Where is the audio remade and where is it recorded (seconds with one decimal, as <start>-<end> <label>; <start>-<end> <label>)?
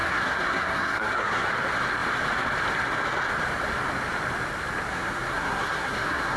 0.0-1.5 remade; 1.5-4.9 recorded; 4.9-6.4 remade